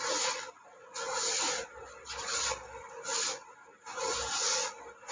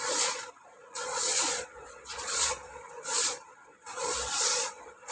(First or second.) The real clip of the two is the first